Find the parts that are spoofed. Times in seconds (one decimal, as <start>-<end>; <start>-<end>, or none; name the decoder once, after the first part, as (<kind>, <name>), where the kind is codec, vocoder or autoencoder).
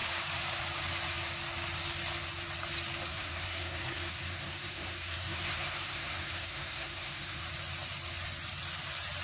3.1-7.4 (codec, SNAC)